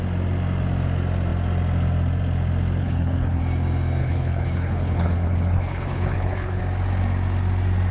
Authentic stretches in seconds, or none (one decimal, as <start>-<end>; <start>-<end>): 0.0-2.8; 3.4-4.0; 6.6-7.9